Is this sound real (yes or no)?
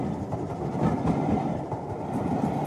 yes